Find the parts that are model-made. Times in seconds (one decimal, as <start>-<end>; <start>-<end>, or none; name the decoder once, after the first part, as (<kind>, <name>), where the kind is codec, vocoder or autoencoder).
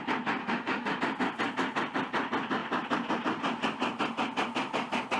0.4-1.0 (autoencoder, DAC-VAE)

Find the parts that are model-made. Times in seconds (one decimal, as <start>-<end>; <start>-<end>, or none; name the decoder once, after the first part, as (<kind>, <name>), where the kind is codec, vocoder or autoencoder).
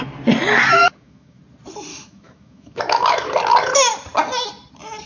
0.8-1.4 (autoencoder, DAC-VAE); 1.9-3.3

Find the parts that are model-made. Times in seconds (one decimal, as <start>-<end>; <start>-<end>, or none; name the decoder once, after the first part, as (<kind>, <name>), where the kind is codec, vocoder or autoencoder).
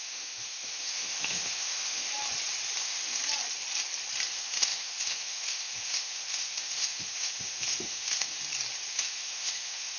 0.0-2.1 (autoencoder, DAC-VAE); 2.8-3.2; 4.3-8.4; 8.9-10.0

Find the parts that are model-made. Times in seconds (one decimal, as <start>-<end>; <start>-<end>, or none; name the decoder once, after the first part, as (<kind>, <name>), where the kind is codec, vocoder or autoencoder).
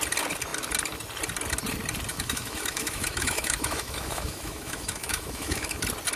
2.1-5.8 (autoencoder, DAC-VAE)